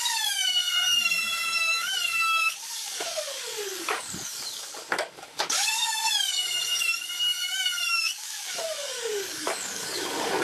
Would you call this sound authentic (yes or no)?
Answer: no